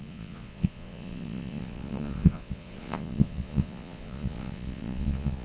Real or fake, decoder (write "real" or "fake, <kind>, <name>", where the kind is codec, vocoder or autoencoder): fake, vocoder, Vocos